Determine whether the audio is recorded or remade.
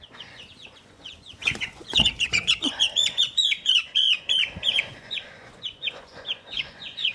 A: remade